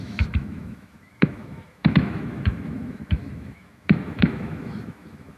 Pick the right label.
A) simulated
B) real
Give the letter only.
A